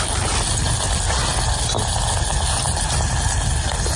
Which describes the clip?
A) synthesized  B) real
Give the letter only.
B